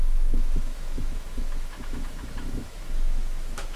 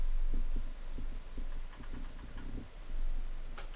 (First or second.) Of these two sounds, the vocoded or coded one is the first